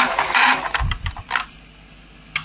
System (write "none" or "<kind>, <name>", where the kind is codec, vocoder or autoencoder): none